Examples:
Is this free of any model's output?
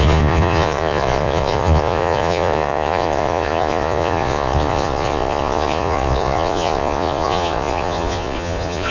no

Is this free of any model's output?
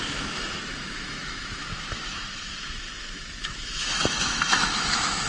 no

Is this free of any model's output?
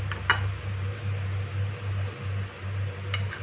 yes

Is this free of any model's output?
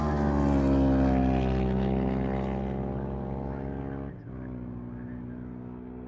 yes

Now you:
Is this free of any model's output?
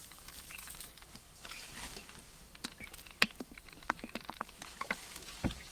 no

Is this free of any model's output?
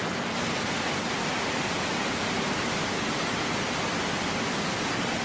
yes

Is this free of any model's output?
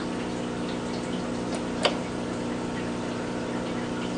yes